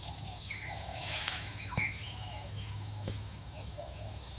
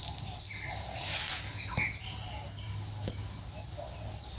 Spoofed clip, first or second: first